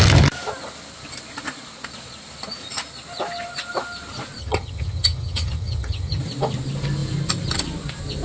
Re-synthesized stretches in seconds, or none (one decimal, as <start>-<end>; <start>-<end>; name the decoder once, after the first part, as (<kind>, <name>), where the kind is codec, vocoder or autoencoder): 4.4-6.2 (vocoder, HiFi-GAN)